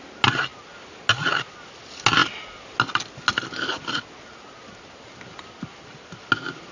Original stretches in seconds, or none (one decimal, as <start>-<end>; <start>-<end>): 0.0-6.7